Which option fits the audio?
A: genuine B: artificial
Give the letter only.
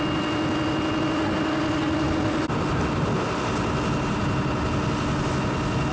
A